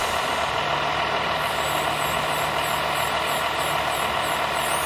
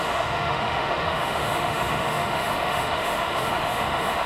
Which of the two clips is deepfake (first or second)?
second